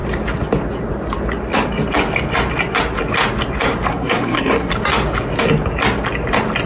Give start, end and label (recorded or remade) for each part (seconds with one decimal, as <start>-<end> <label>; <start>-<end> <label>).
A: 0.0-3.9 recorded; 3.9-4.7 remade; 4.7-6.7 recorded